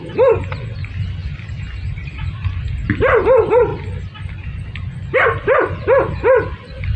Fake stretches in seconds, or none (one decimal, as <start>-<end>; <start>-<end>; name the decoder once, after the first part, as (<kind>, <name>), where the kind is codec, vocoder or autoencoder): 1.2-2.7 (vocoder, BigVGAN v2)